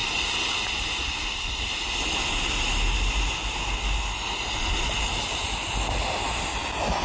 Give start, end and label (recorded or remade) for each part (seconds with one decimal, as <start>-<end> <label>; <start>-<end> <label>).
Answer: 0.0-7.0 recorded